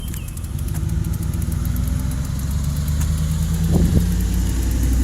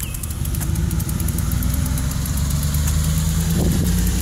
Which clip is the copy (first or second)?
second